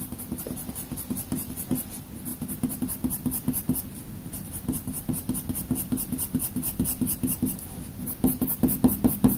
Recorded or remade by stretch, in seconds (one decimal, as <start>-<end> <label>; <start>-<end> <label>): 0.0-2.3 remade; 2.3-2.8 recorded; 2.8-9.4 remade